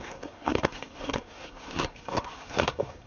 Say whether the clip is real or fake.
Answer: fake